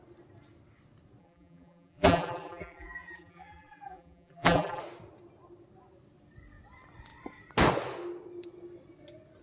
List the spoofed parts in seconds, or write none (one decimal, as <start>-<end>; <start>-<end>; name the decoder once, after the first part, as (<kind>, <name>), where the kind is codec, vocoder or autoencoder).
1.2-4.8 (vocoder, BigVGAN v2)